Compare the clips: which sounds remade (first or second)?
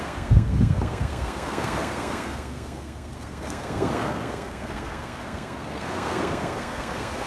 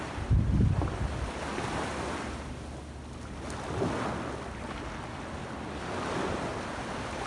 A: first